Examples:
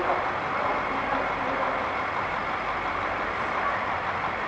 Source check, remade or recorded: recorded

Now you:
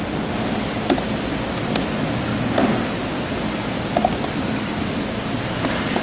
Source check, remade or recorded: recorded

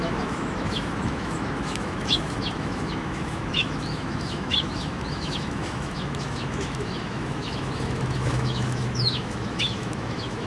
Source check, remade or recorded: remade